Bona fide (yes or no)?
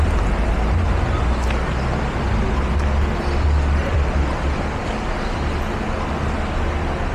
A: yes